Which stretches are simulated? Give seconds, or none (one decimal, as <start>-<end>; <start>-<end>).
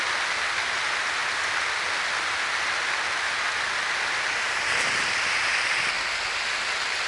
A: none